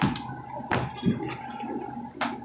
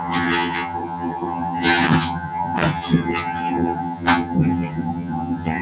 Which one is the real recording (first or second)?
first